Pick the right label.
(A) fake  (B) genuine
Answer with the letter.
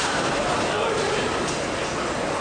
B